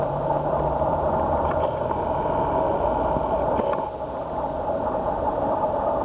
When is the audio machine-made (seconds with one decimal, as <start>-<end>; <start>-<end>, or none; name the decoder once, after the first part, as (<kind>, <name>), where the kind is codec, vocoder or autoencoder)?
0.0-2.7 (vocoder, BigVGAN v2); 4.2-6.0